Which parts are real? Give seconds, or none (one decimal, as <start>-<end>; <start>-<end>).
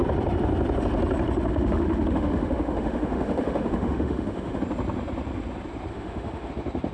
0.0-1.5; 4.6-5.9; 6.5-6.9